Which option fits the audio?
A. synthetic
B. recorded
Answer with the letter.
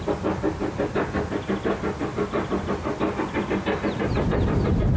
B